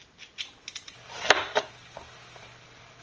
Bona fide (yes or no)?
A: yes